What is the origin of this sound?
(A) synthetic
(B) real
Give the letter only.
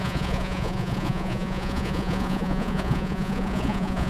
A